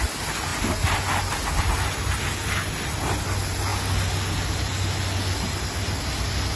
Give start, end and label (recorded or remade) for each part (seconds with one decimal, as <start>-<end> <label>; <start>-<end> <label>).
0.0-6.6 recorded